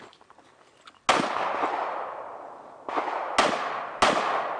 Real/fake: real